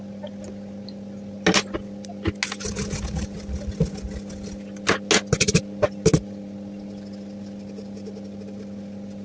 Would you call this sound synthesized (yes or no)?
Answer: no